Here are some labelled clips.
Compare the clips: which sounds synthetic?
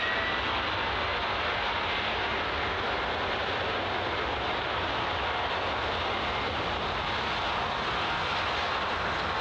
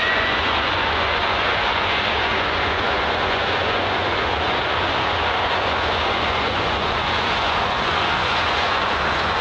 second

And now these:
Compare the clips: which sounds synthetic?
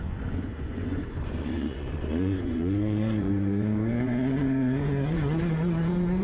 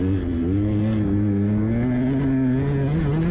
first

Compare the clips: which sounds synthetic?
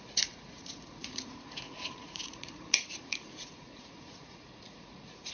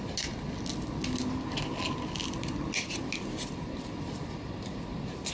first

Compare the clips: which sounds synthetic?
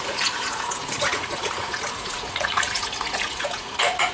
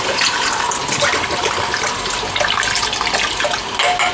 first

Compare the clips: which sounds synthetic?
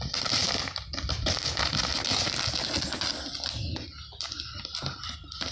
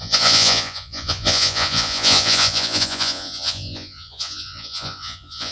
second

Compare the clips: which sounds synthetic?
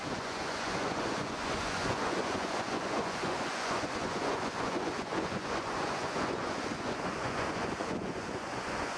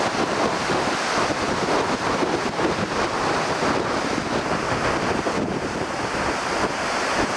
first